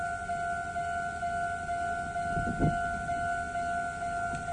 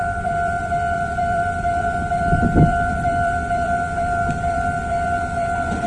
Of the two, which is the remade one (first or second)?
second